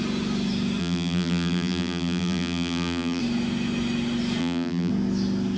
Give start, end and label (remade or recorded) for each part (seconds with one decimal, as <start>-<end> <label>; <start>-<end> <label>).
0.0-0.8 recorded; 0.8-3.2 remade; 3.2-4.4 recorded; 4.4-4.9 remade; 4.9-5.6 recorded